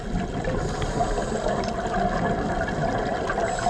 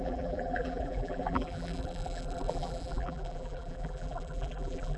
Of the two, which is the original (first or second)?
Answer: first